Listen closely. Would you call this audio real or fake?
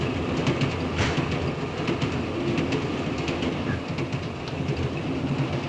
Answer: real